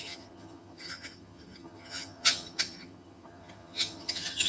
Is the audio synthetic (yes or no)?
yes